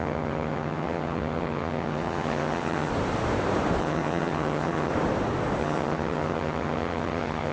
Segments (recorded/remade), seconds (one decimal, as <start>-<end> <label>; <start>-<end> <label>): 0.0-2.9 remade; 2.9-3.8 recorded; 3.8-4.9 remade; 4.9-5.6 recorded; 5.6-7.5 remade